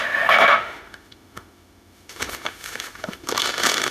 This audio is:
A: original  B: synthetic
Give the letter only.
B